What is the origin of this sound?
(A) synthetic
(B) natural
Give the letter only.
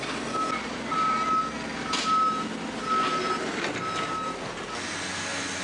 B